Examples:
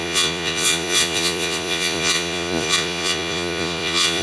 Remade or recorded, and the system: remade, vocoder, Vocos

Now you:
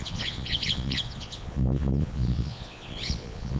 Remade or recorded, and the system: remade, vocoder, Vocos